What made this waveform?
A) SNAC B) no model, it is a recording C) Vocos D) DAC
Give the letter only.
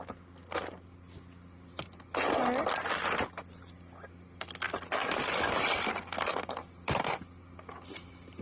B